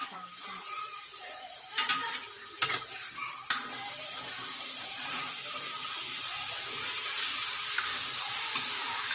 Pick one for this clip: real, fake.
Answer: fake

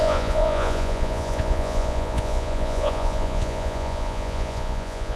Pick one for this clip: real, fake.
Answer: fake